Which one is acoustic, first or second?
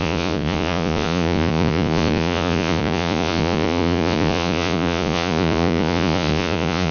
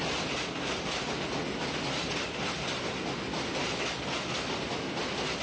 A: second